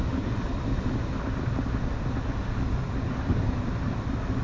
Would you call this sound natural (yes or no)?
yes